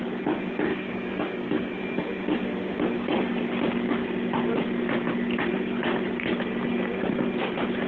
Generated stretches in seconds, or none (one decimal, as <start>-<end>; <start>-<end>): 0.7-1.8